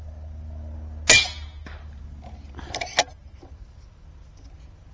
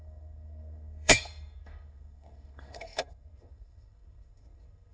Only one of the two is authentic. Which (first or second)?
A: first